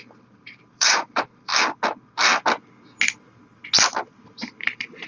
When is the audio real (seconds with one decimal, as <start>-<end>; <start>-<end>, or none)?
1.5-4.6

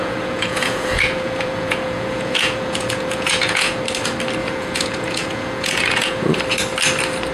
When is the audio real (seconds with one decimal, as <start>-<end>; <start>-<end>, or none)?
3.8-4.4; 6.4-7.3

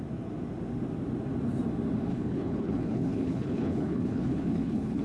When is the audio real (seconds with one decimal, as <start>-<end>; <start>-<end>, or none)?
0.0-2.1